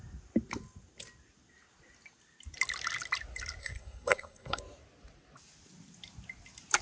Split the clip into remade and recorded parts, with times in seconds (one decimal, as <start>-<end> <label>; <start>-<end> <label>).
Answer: 0.0-3.6 recorded; 3.6-4.6 remade; 4.6-6.8 recorded